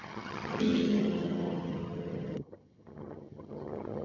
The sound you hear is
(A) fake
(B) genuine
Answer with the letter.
A